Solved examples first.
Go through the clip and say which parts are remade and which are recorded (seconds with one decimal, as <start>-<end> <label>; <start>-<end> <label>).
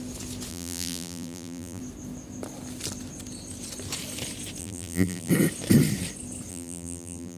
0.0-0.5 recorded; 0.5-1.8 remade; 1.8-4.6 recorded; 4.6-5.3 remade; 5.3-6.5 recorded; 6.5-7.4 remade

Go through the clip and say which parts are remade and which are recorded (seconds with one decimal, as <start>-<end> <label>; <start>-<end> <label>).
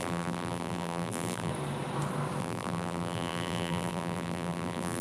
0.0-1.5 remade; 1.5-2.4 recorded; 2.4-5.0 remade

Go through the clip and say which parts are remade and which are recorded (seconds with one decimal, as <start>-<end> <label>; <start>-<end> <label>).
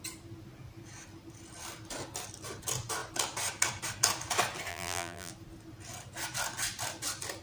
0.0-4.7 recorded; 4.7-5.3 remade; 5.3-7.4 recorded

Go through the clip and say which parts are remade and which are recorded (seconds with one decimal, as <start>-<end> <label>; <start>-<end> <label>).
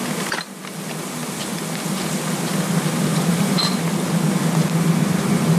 0.0-3.1 recorded; 3.1-3.8 remade; 3.8-5.6 recorded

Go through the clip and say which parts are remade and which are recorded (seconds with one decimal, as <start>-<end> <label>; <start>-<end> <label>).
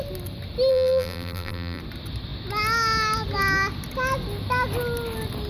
0.0-0.7 recorded; 0.7-1.8 remade; 1.8-5.5 recorded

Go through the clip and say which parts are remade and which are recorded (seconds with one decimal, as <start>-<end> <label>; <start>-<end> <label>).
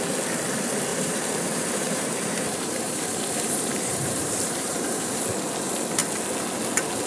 0.0-0.9 recorded; 0.9-5.2 remade; 5.2-7.1 recorded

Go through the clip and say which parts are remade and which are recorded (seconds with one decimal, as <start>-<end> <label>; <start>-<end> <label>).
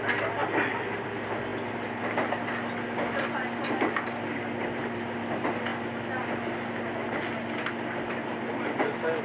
0.0-9.2 recorded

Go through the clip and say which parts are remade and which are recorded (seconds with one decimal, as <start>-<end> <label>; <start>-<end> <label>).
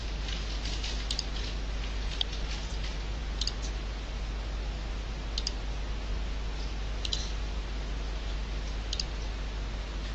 0.0-10.1 recorded